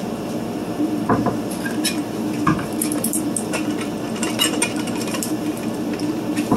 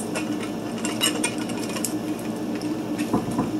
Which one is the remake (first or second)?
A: first